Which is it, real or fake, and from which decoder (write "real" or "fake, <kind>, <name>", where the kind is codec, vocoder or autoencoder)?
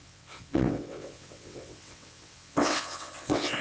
fake, vocoder, WaveNeXt